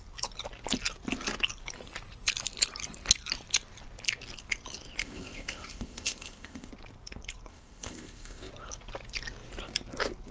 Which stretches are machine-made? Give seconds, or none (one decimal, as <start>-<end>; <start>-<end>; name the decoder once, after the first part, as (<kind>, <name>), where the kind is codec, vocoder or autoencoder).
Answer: 5.0-6.7 (codec, ZipCodec); 7.5-8.5